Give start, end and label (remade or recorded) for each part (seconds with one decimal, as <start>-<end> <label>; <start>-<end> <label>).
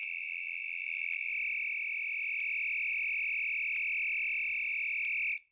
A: 0.0-1.3 remade; 1.3-5.5 recorded